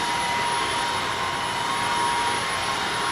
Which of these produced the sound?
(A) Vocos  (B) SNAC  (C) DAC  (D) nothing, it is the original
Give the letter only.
D